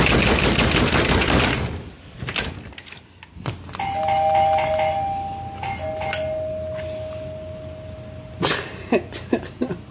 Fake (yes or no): no